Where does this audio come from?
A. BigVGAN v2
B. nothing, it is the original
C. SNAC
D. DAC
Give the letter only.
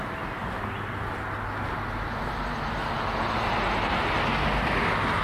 B